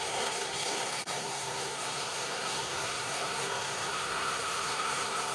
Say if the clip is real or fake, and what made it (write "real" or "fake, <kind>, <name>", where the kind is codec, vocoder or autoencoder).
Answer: fake, codec, SNAC